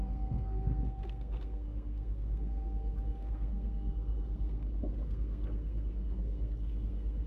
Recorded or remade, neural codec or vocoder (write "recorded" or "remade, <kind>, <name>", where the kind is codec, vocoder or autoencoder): remade, codec, SNAC